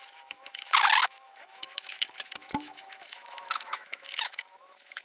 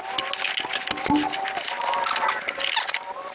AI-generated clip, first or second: first